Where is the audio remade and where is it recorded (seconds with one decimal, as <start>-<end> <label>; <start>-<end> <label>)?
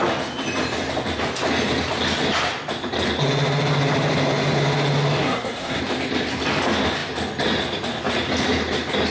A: 0.0-5.2 recorded; 5.2-5.8 remade; 5.8-9.1 recorded